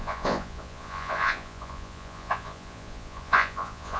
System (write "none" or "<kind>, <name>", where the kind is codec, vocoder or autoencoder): vocoder, Vocos